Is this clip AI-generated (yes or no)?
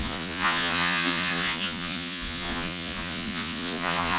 yes